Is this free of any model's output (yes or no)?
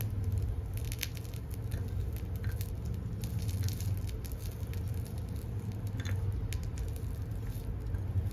yes